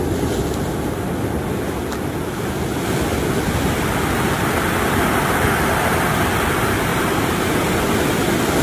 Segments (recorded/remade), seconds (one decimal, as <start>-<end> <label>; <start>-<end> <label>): 0.0-6.9 recorded; 6.9-7.4 remade; 7.4-8.6 recorded